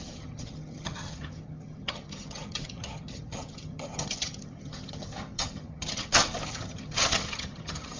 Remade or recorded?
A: remade